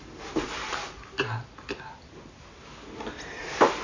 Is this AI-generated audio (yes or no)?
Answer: no